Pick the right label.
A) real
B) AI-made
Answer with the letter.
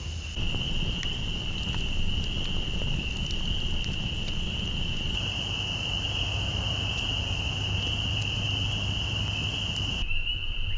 A